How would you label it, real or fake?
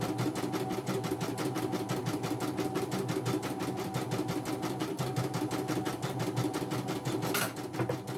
real